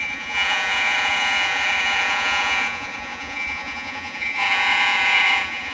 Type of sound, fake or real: fake